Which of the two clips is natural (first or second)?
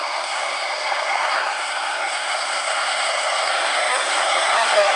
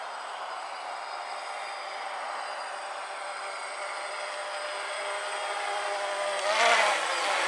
second